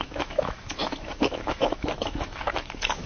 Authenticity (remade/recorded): remade